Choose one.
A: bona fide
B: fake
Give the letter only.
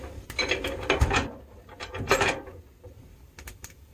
A